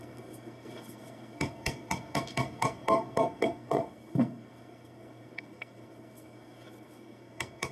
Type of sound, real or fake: fake